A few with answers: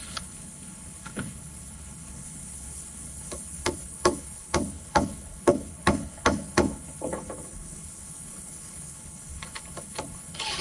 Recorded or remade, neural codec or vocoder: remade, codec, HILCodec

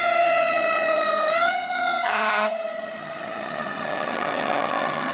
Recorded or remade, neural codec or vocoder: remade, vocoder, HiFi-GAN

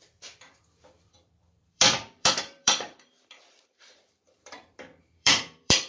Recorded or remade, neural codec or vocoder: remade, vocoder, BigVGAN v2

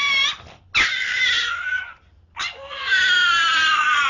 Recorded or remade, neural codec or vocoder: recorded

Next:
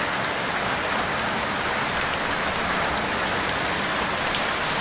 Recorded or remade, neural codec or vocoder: recorded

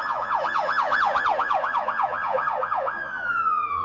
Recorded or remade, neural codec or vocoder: remade, vocoder, Vocos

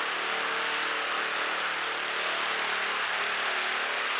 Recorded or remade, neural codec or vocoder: recorded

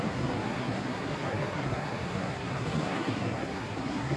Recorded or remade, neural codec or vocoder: remade, codec, SNAC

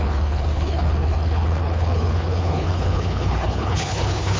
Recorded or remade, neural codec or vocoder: remade, codec, HILCodec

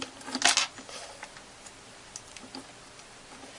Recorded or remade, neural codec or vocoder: recorded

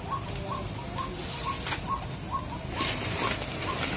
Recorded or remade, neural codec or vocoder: recorded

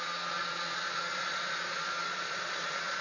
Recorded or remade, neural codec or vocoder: remade, vocoder, Vocos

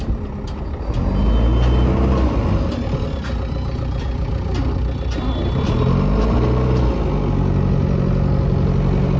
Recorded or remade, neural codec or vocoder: recorded